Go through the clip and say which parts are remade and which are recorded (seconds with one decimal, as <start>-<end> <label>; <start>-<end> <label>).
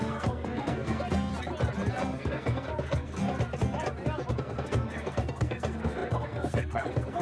0.0-1.3 remade; 1.3-1.9 recorded; 1.9-3.2 remade; 3.2-4.3 recorded; 4.3-7.2 remade